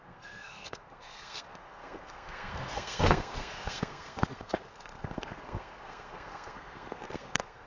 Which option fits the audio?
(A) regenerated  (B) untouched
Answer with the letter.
A